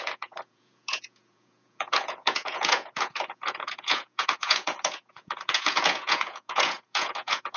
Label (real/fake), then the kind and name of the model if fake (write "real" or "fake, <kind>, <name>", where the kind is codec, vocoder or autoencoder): fake, vocoder, Vocos